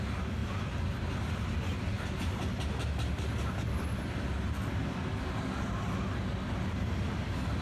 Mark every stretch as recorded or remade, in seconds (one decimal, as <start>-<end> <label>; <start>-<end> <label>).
0.0-7.6 recorded

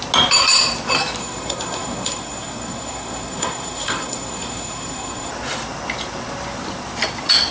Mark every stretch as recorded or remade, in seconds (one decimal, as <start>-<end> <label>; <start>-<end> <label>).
0.0-1.2 recorded; 1.2-5.3 remade; 5.3-7.5 recorded

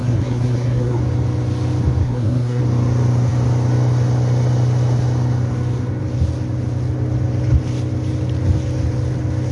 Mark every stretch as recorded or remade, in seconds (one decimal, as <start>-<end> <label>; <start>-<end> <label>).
0.0-1.0 remade; 1.0-2.0 recorded; 2.0-2.6 remade; 2.6-9.5 recorded

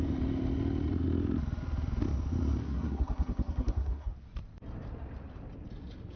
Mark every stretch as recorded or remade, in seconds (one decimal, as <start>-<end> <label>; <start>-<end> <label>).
0.0-2.6 recorded; 2.6-4.1 remade; 4.1-6.2 recorded

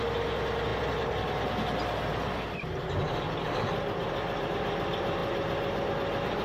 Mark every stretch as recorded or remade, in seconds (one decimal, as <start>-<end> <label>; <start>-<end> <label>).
0.0-6.4 recorded

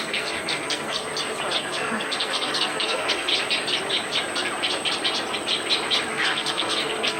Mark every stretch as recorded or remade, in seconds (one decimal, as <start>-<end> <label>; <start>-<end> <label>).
0.0-1.0 remade; 1.0-1.6 recorded; 1.6-3.3 remade; 3.3-6.1 recorded; 6.1-7.2 remade

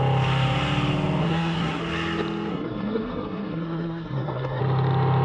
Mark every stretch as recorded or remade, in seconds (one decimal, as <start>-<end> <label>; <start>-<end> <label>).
0.0-1.2 recorded; 1.2-1.8 remade; 1.8-2.5 recorded; 2.5-4.6 remade; 4.6-5.2 recorded